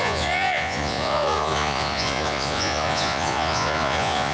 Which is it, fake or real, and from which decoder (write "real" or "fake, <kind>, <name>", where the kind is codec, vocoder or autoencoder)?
fake, vocoder, Vocos